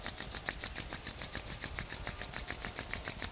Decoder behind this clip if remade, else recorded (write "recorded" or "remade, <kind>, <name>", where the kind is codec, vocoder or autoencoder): recorded